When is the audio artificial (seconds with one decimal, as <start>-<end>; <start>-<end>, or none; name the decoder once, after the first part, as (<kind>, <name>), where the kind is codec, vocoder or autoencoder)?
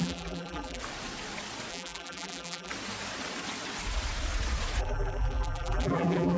0.0-0.8 (vocoder, BigVGAN v2); 1.7-2.7; 4.8-6.4